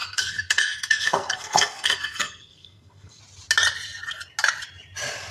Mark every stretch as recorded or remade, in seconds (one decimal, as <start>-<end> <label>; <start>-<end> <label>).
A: 0.0-3.2 remade; 3.2-5.3 recorded